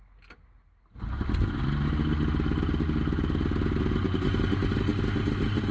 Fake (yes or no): no